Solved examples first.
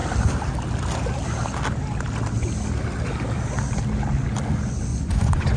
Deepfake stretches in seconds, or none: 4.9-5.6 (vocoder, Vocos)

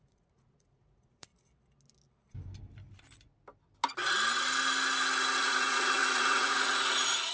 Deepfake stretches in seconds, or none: 0.0-1.3 (vocoder, Vocos); 5.4-7.3

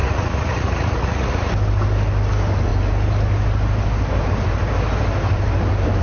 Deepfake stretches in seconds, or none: 0.0-1.5 (vocoder, Vocos)

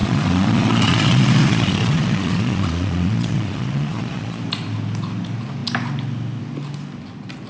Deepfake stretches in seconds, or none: 0.0-4.4 (vocoder, Vocos)

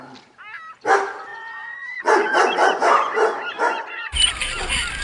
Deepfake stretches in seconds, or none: 1.3-4.3 (vocoder, Vocos)

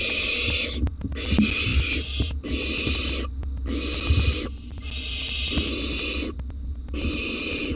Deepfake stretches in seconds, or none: none

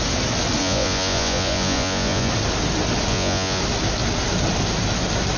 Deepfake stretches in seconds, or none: 0.6-2.3 (vocoder, Vocos); 3.1-3.6

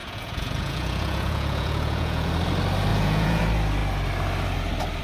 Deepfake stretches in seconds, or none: 0.0-2.3 (vocoder, Vocos); 2.9-3.4